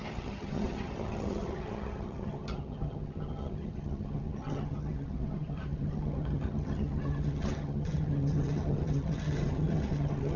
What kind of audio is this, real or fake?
fake